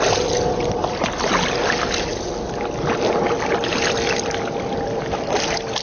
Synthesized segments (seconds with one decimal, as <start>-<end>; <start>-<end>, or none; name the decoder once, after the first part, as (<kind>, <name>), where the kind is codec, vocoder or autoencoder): none